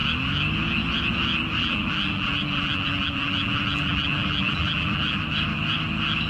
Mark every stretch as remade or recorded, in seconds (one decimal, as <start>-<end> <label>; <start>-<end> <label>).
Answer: 0.0-1.6 recorded; 1.6-5.2 remade; 5.2-6.3 recorded